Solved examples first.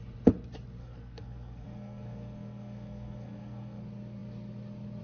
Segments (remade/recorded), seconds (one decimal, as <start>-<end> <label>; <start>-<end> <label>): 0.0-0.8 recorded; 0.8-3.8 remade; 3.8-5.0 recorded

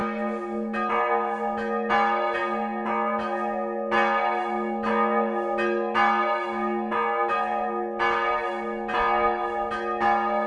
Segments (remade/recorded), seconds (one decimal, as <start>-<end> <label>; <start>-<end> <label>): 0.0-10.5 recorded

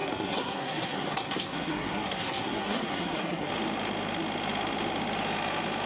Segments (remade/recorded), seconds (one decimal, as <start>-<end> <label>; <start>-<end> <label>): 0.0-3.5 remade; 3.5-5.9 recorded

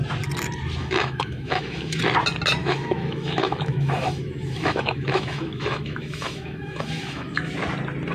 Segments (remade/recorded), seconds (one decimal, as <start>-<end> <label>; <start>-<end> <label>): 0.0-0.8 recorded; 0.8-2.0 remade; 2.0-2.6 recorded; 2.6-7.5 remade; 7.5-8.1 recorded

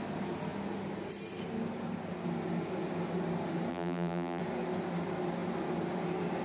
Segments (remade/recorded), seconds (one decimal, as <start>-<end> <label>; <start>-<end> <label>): 0.0-3.7 recorded; 3.7-4.4 remade; 4.4-6.4 recorded